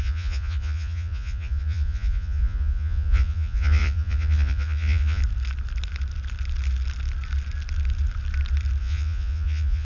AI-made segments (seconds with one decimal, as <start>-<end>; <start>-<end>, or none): 0.0-5.2; 8.8-9.8